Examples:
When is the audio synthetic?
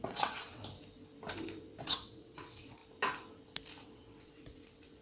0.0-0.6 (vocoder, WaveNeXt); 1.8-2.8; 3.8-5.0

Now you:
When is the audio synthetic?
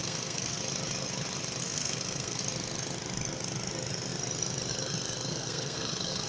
0.0-0.6 (codec, SNAC); 1.6-2.4; 5.3-6.3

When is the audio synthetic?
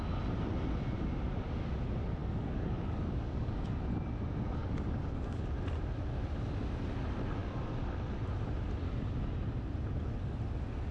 2.2-3.5 (codec, DAC); 4.6-5.4